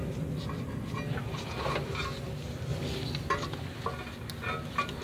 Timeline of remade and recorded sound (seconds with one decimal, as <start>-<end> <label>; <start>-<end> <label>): 0.0-5.0 recorded